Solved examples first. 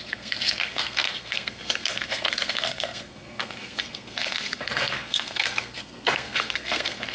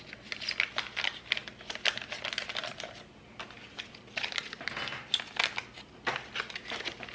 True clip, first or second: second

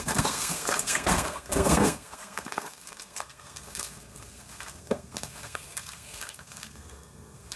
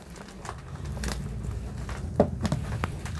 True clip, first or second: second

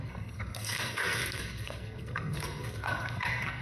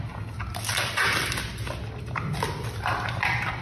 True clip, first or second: second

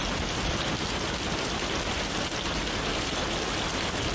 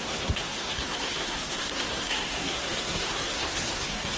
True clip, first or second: first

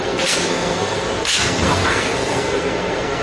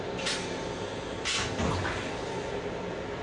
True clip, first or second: second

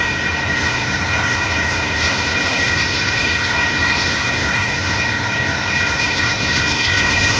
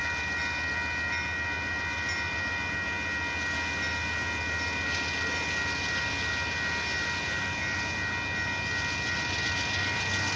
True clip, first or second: second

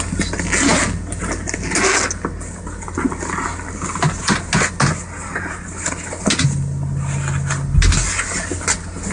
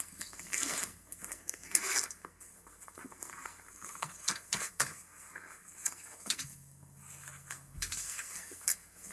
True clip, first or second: first